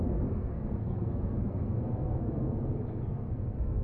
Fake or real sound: fake